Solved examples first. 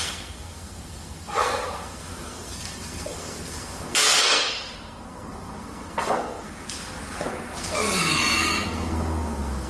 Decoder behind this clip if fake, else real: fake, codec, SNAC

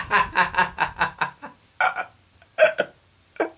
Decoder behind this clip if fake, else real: real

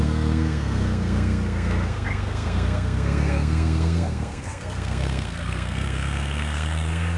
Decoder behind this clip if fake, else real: fake, codec, SNAC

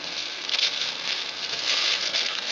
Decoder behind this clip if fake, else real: fake, codec, SNAC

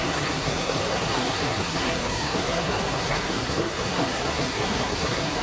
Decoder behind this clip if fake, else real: fake, codec, SNAC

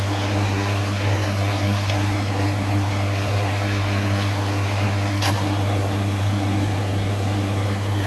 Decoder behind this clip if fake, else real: fake, codec, SNAC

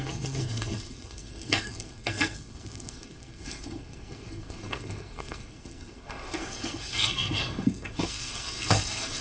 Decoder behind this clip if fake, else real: fake, codec, SNAC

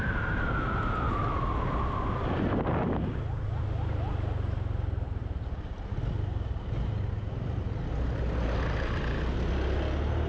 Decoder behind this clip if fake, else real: real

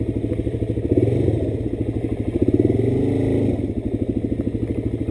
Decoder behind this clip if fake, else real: real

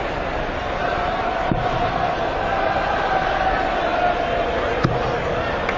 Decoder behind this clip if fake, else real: real